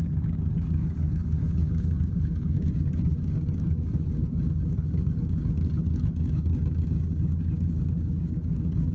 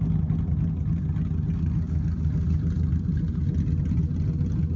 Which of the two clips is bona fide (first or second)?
second